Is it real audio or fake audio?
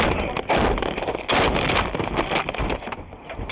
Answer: real